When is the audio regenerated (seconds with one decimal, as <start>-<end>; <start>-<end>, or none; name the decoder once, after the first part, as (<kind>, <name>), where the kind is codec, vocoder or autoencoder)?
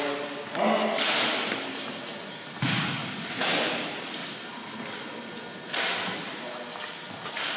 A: none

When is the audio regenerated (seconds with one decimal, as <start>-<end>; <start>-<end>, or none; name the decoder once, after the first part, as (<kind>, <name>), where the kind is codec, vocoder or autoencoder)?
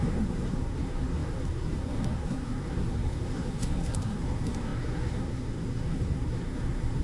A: 0.0-7.0 (codec, SNAC)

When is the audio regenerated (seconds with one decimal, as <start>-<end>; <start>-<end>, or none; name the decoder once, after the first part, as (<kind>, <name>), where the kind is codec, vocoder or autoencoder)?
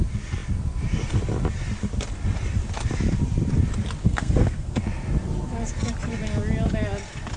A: 4.0-4.8 (codec, SNAC)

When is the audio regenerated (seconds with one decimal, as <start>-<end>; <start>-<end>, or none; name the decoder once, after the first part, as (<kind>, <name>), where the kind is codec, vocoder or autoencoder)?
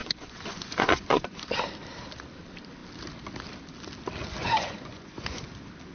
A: 0.0-1.5 (vocoder, Vocos); 4.4-5.4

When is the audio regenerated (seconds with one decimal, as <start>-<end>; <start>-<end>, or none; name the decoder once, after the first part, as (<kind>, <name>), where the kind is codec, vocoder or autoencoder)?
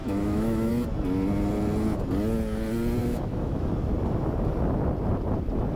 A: 0.0-0.7 (autoencoder, DAC-VAE); 3.0-3.7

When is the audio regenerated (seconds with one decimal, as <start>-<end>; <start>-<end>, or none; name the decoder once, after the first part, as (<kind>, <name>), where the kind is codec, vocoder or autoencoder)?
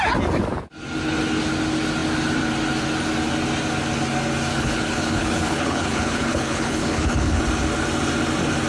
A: 4.5-7.4 (codec, HILCodec)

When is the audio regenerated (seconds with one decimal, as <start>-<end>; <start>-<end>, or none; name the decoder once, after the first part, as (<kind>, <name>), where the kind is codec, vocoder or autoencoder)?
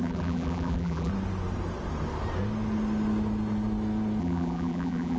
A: 0.0-1.1 (vocoder, BigVGAN v2); 4.2-5.2